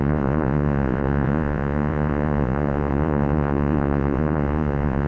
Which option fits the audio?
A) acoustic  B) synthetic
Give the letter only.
B